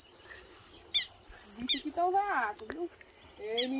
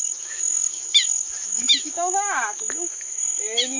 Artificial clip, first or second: second